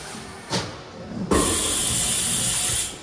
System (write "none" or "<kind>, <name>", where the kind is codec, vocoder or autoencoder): none